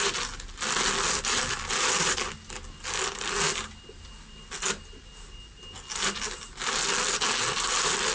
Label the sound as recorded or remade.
recorded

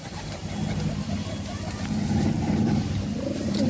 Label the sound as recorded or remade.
recorded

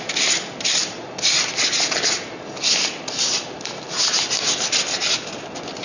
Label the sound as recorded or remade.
recorded